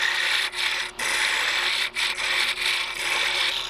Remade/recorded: recorded